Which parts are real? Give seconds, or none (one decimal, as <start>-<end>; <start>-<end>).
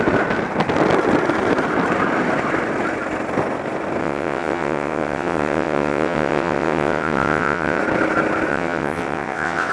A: 0.0-4.0; 7.8-8.5